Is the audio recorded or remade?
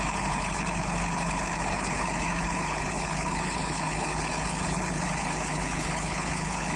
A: remade